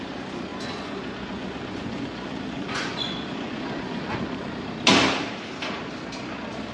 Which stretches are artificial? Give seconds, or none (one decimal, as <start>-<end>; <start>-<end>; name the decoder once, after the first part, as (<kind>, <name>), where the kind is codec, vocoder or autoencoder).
0.5-4.5 (vocoder, Vocos)